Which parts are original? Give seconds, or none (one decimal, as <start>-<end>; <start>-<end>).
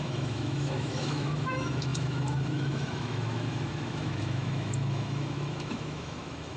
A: none